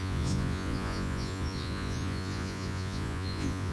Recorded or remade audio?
remade